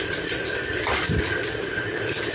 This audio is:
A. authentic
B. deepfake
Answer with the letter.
A